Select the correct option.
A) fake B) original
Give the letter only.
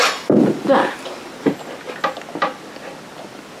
B